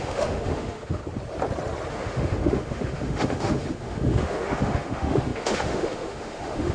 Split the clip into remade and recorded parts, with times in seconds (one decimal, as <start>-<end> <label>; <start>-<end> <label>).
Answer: 0.0-1.0 remade; 1.0-1.9 recorded; 1.9-6.7 remade